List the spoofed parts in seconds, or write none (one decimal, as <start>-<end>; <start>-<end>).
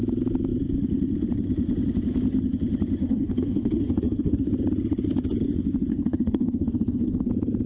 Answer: 3.0-4.5; 5.9-7.3